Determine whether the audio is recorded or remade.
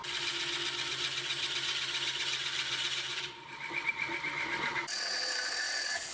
remade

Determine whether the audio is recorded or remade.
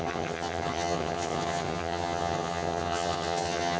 remade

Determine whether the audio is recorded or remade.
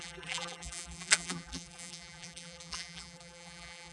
remade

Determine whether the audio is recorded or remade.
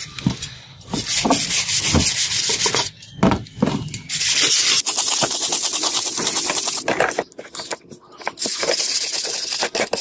recorded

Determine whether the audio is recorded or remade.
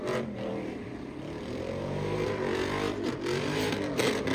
remade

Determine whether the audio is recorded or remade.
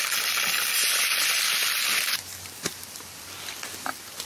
recorded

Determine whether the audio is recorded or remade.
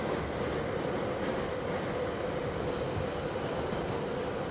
recorded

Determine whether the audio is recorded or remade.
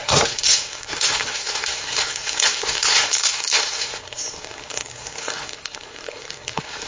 remade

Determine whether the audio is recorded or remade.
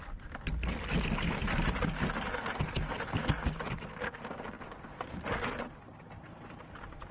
recorded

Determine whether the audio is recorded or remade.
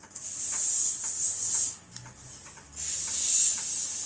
recorded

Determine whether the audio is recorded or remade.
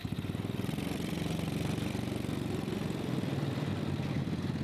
remade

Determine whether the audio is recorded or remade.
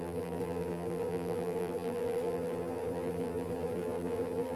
remade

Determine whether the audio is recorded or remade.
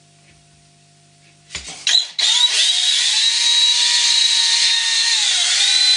recorded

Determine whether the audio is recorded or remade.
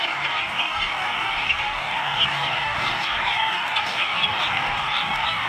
remade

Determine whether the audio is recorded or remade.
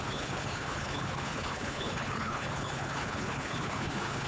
remade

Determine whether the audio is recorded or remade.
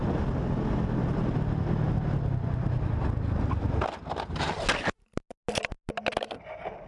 recorded